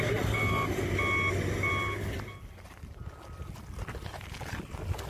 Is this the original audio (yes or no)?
yes